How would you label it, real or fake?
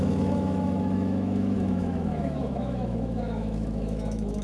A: fake